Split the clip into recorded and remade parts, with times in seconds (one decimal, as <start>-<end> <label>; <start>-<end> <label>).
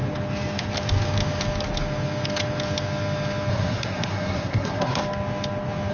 0.0-3.5 recorded; 3.5-5.0 remade; 5.0-5.9 recorded